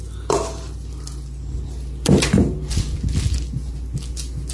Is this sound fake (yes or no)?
no